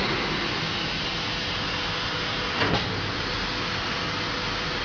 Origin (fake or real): real